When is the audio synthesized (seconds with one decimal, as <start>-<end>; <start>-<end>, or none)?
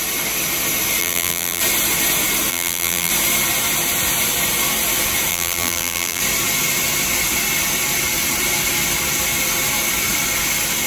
1.0-1.6; 2.5-3.1; 5.3-6.2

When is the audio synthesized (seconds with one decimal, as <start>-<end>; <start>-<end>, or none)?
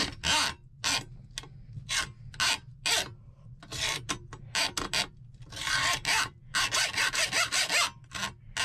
none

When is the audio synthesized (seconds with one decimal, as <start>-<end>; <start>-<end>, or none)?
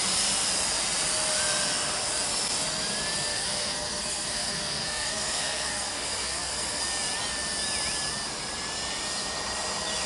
3.3-6.8